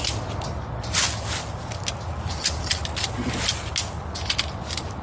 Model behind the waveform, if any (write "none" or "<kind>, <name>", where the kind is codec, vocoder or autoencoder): none